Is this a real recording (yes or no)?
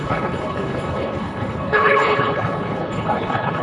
no